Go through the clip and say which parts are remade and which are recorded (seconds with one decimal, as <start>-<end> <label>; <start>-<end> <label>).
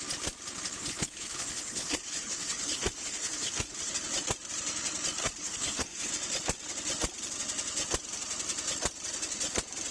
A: 0.0-0.8 recorded; 0.8-3.9 remade; 3.9-5.2 recorded; 5.2-6.1 remade; 6.1-9.9 recorded